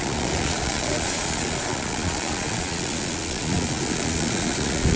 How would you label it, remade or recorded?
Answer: remade